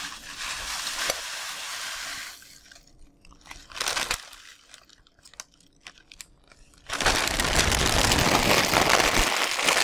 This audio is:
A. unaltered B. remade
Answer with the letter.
A